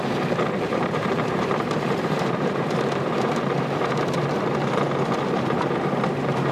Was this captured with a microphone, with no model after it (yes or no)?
no